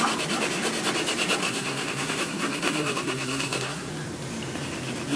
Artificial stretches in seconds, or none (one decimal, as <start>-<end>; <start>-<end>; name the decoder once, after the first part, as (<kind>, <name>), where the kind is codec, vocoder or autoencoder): 1.4-3.9 (codec, SNAC)